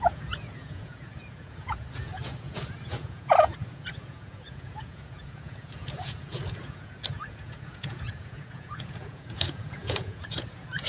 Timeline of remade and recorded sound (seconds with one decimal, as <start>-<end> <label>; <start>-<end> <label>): 0.0-10.9 remade